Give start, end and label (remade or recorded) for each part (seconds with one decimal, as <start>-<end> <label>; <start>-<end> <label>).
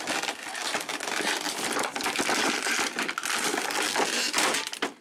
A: 0.0-5.0 recorded